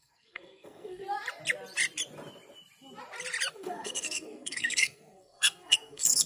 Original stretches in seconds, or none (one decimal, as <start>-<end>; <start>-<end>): 1.0-3.5